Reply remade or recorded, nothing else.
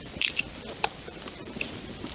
recorded